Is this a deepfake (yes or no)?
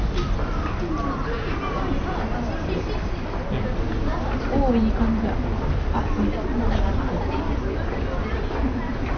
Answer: no